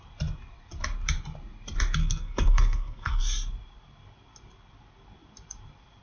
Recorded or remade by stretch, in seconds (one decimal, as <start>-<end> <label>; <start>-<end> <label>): 0.0-2.0 recorded; 2.0-3.2 remade; 3.2-6.0 recorded